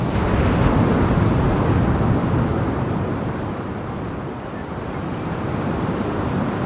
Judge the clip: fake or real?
real